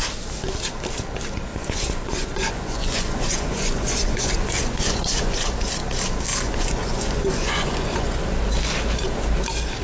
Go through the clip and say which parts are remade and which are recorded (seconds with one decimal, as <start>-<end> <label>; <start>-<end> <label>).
0.0-1.5 recorded; 1.5-5.5 remade; 5.5-6.3 recorded; 6.3-8.2 remade; 8.2-9.8 recorded